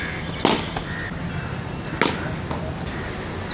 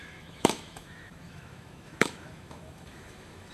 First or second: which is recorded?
first